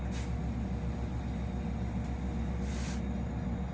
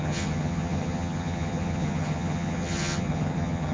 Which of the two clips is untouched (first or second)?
first